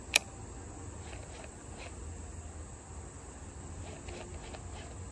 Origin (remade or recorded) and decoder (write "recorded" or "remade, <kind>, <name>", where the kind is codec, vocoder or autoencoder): recorded